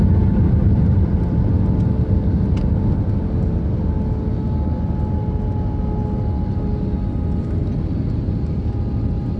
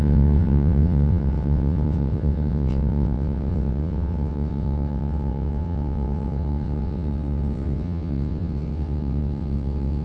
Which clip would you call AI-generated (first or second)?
second